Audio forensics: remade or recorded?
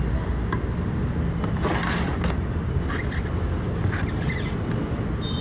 recorded